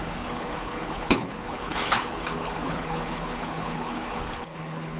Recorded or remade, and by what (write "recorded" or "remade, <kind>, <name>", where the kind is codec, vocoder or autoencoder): remade, codec, HILCodec